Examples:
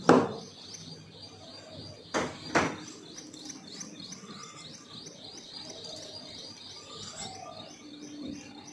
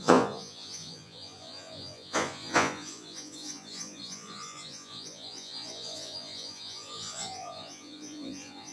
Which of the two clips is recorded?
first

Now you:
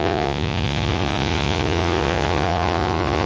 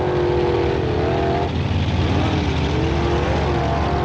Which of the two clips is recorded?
second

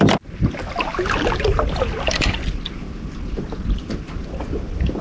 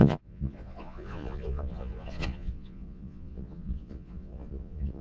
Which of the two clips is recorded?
first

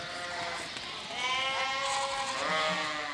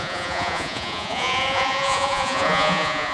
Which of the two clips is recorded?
first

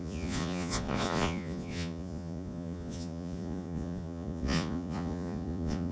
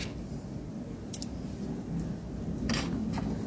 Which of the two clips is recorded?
second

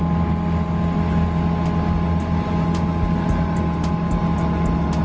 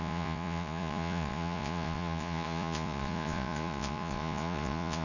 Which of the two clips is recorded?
first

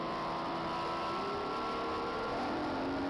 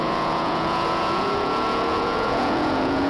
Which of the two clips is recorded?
first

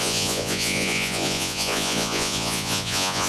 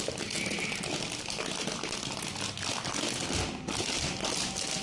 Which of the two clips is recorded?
second